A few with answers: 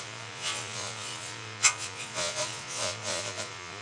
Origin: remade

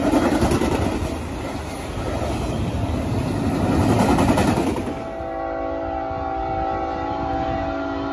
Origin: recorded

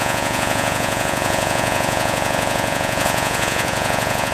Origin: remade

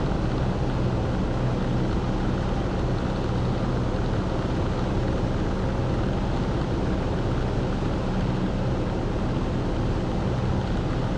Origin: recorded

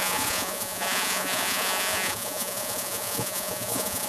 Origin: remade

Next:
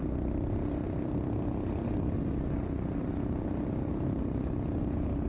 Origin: recorded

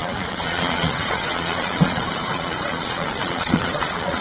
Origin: remade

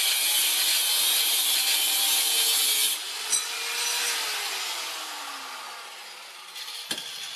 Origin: recorded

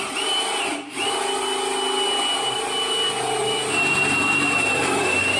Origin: recorded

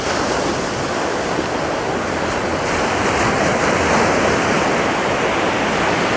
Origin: recorded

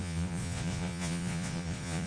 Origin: remade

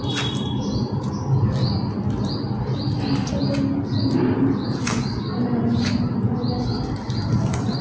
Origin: recorded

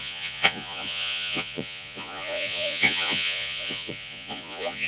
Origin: remade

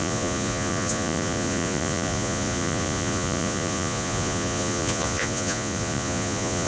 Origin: remade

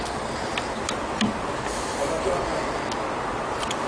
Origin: recorded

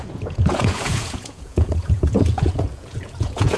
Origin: remade